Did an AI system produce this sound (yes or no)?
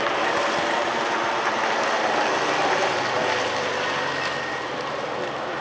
no